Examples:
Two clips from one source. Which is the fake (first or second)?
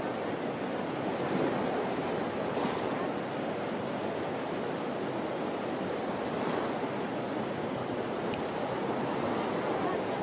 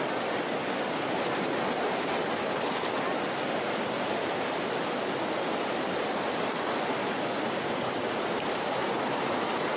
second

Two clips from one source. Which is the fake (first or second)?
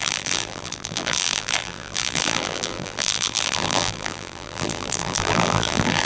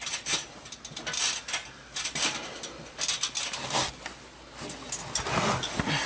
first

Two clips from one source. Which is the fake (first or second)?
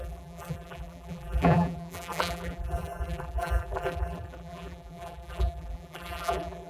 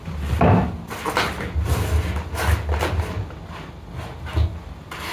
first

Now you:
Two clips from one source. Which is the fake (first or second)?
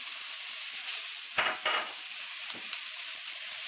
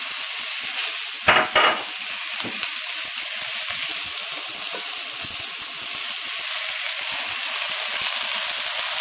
first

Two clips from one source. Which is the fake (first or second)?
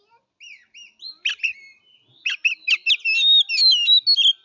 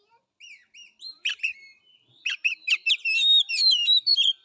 second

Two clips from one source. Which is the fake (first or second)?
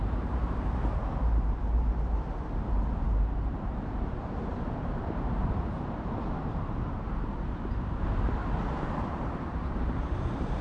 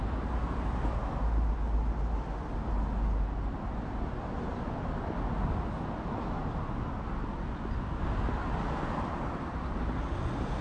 first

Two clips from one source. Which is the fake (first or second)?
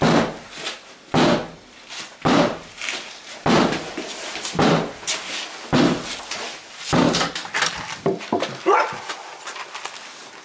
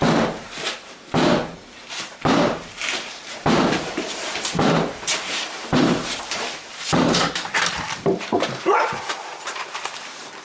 second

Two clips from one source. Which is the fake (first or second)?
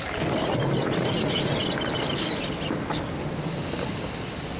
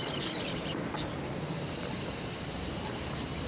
second